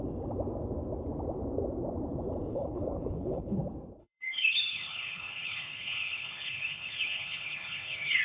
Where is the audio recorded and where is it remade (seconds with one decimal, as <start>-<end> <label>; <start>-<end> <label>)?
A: 0.0-2.5 recorded; 2.5-3.6 remade; 3.6-4.0 recorded; 4.0-8.2 remade